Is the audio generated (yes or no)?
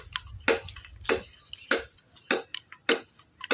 no